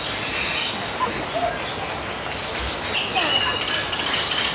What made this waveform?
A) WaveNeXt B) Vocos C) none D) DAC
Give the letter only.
C